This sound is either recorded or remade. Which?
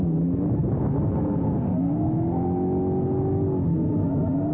recorded